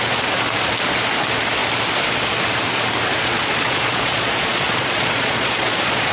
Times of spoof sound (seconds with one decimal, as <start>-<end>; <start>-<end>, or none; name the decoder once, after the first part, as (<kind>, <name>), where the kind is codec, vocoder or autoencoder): 3.2-6.1 (vocoder, Vocos)

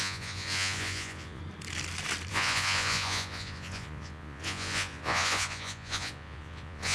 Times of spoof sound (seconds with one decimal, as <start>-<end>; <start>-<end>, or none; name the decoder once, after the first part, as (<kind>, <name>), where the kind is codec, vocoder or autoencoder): 0.0-1.4 (vocoder, Vocos); 2.3-6.9

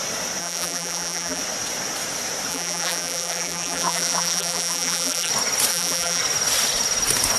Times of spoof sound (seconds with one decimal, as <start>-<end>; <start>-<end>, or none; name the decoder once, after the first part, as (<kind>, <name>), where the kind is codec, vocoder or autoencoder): 0.4-1.4 (vocoder, BigVGAN v2); 2.5-5.3; 5.7-6.2

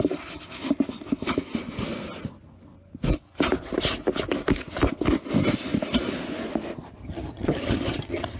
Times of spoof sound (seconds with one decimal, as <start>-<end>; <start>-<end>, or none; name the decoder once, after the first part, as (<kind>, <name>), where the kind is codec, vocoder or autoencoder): 7.0-8.4 (vocoder, HiFi-GAN)

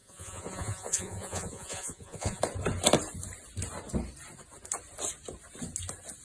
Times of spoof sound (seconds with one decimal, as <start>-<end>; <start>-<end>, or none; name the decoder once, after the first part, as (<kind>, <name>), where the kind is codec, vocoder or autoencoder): 0.0-2.4 (vocoder, Vocos)

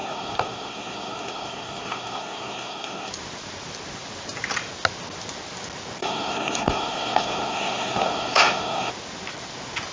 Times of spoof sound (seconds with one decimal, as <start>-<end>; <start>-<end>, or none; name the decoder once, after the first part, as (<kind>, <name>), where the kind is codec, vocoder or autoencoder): 0.0-3.1 (codec, SNAC); 6.0-8.9